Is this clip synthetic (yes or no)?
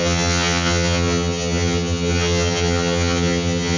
yes